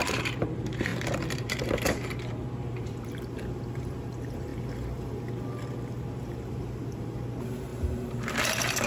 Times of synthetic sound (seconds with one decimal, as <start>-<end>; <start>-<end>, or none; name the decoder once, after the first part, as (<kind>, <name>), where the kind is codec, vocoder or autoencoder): 0.0-4.5 (vocoder, BigVGAN v2); 6.1-8.9